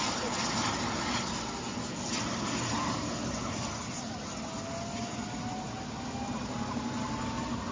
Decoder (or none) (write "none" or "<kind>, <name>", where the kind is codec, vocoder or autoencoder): none